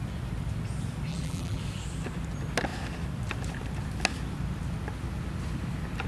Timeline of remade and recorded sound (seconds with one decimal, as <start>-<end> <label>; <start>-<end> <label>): 0.0-1.1 recorded; 1.1-1.6 remade; 1.6-6.1 recorded